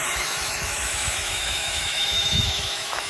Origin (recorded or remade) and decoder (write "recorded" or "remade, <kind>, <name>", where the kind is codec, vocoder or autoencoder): remade, autoencoder, DAC-VAE